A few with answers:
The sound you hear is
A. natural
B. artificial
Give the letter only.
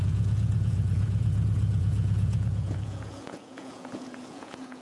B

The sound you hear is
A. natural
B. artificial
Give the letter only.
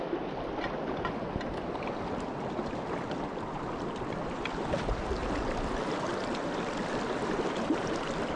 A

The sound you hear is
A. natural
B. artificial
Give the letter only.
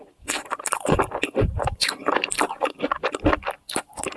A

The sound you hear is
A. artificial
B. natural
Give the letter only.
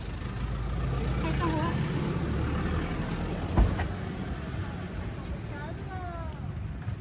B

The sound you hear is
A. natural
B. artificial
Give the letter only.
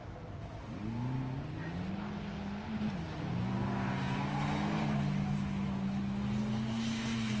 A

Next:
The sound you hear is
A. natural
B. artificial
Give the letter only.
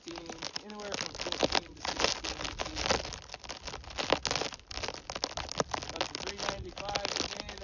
A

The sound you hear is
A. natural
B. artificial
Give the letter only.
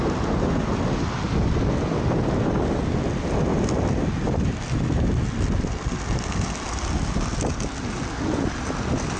A